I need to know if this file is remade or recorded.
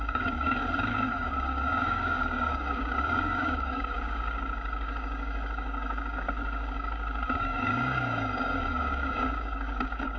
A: remade